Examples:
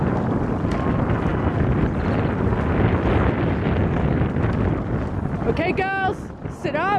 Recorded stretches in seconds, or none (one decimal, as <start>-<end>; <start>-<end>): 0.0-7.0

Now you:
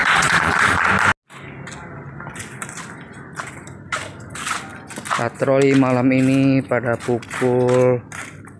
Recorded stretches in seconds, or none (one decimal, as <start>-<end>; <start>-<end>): 0.9-8.6

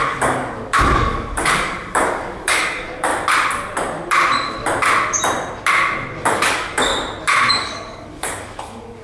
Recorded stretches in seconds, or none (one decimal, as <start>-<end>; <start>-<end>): 3.1-6.2; 6.9-7.5